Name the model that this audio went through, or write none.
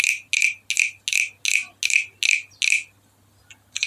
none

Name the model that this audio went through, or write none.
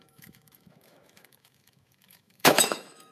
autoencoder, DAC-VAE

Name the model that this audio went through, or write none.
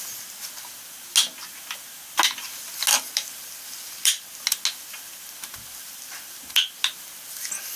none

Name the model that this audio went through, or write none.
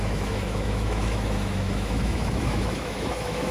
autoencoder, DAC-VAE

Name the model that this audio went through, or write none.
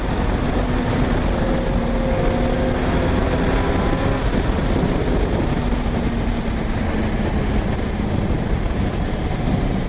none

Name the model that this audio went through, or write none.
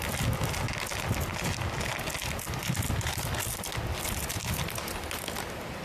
none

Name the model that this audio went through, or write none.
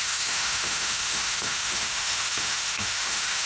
autoencoder, DAC-VAE